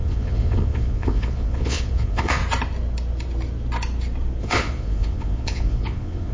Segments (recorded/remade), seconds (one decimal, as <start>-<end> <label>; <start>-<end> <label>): 0.0-2.4 remade; 2.4-4.4 recorded; 4.4-6.3 remade

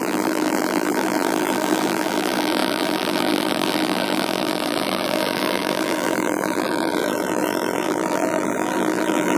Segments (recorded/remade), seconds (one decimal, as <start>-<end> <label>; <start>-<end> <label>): 0.0-9.4 remade

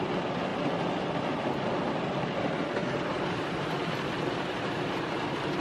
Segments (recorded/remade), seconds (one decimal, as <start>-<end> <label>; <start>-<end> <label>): 0.0-2.8 recorded; 2.8-5.6 remade

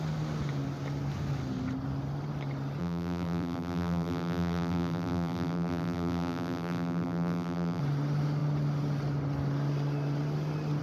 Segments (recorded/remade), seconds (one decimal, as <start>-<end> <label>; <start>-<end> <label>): 0.0-2.8 recorded; 2.8-7.8 remade; 7.8-10.8 recorded

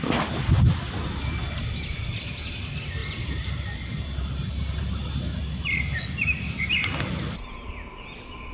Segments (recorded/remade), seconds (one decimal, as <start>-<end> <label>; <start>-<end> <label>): 0.0-3.0 recorded; 3.0-5.1 remade; 5.1-8.5 recorded

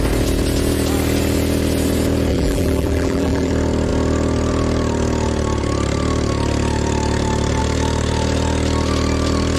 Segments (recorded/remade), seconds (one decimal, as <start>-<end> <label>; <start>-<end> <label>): 0.0-2.3 recorded; 2.3-3.5 remade; 3.5-9.6 recorded

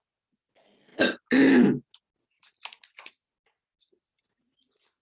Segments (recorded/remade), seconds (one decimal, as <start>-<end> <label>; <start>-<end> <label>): 0.0-5.0 recorded